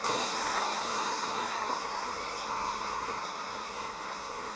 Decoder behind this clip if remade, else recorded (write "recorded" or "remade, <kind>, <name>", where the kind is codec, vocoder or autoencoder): remade, codec, SNAC